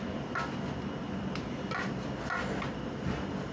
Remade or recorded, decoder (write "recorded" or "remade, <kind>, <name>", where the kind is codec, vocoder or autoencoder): recorded